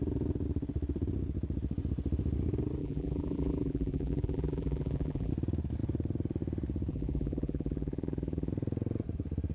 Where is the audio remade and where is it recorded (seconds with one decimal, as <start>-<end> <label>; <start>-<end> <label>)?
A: 0.0-2.8 recorded; 2.8-5.3 remade; 5.3-6.9 recorded; 6.9-8.5 remade; 8.5-9.5 recorded